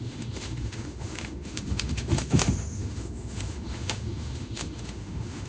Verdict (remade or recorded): remade